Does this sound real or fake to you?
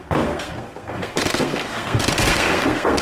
fake